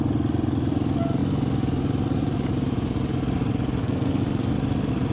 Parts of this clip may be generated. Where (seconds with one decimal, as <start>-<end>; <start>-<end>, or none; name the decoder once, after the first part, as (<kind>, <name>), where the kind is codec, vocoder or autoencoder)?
3.8-4.5 (codec, SNAC)

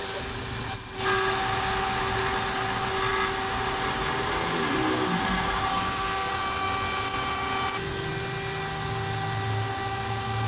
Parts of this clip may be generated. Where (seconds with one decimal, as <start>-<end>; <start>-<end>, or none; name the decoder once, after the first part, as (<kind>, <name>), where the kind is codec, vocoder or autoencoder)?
5.7-6.3 (codec, SNAC)

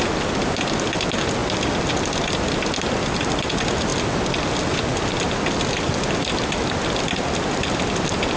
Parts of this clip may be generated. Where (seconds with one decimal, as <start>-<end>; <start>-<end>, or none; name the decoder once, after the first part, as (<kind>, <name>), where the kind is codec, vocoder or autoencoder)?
none

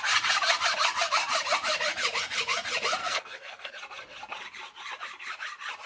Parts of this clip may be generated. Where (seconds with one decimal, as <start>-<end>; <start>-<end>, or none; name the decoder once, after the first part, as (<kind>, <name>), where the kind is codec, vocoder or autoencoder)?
3.0-3.7 (codec, SNAC)

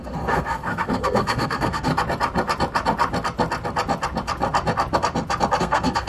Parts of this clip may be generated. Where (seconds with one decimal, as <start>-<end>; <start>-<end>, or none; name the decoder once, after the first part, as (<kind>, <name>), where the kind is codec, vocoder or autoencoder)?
0.0-1.9 (codec, SNAC); 5.6-6.1

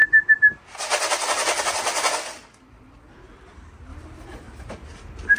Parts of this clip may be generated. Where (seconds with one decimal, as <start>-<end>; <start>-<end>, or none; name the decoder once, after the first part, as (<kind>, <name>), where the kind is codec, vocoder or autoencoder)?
none

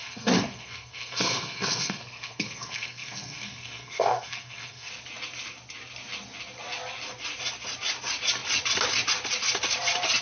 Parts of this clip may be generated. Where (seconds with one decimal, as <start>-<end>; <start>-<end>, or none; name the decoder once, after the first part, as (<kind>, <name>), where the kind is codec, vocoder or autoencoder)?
0.0-4.9 (codec, SNAC)